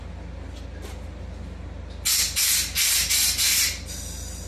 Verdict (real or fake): real